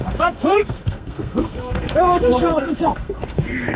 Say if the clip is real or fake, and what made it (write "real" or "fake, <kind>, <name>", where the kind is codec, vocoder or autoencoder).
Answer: fake, codec, SNAC